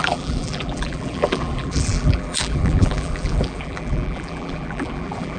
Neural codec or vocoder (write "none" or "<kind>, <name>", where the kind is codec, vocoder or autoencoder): vocoder, BigVGAN v2